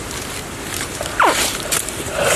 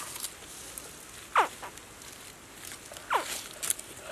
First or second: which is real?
second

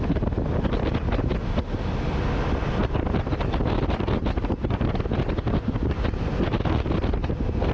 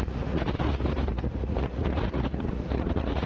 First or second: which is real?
first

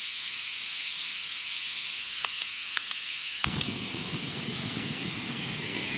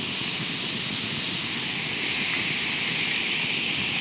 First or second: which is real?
second